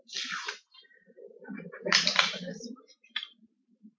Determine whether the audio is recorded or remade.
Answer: remade